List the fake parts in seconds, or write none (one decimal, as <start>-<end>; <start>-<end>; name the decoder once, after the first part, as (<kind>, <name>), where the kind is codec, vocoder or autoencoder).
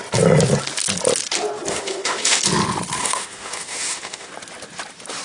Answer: 1.7-2.4 (autoencoder, DAC-VAE); 3.0-4.3